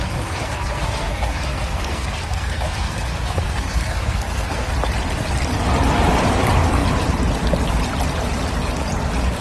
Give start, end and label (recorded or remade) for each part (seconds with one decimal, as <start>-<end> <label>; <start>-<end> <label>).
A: 0.0-4.7 remade; 4.7-9.4 recorded

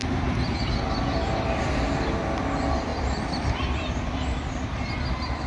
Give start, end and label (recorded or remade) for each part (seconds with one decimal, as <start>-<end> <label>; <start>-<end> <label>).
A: 0.0-1.6 remade; 1.6-2.9 recorded; 2.9-3.6 remade; 3.6-5.5 recorded

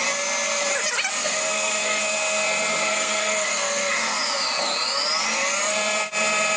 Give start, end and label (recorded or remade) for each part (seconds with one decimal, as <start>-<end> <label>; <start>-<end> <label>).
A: 0.0-1.2 recorded; 1.2-2.0 remade; 2.0-2.8 recorded; 2.8-4.2 remade; 4.2-6.6 recorded

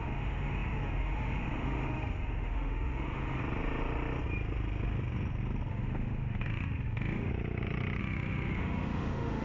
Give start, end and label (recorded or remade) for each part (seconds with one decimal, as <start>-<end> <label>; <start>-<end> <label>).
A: 0.0-3.4 remade; 3.4-5.7 recorded; 5.7-7.3 remade; 7.3-8.0 recorded; 8.0-9.4 remade

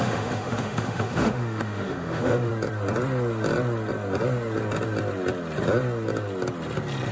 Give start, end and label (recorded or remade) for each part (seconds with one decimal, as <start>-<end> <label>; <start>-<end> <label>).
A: 0.0-2.5 remade; 2.5-7.1 recorded

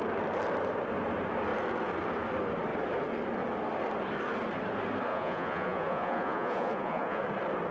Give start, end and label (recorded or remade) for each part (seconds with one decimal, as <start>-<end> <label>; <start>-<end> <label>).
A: 0.0-5.1 recorded; 5.1-7.2 remade; 7.2-7.7 recorded